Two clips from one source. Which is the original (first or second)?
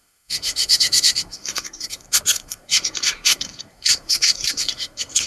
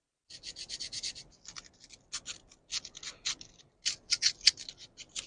second